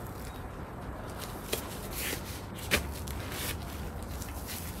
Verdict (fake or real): real